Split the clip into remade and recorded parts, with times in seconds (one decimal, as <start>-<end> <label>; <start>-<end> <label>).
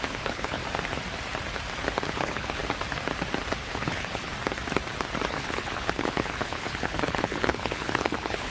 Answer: 0.0-0.6 remade; 0.6-2.1 recorded; 2.1-2.6 remade; 2.6-3.6 recorded; 3.6-4.3 remade; 4.3-5.3 recorded; 5.3-8.5 remade